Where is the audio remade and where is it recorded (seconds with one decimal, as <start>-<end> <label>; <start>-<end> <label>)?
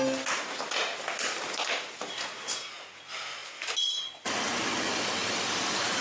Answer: 0.0-2.1 recorded; 2.1-2.7 remade; 2.7-6.0 recorded